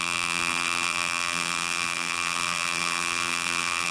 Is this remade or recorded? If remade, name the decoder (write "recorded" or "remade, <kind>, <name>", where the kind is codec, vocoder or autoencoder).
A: remade, vocoder, BigVGAN v2